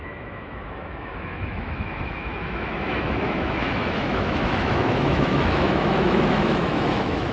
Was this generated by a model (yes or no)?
yes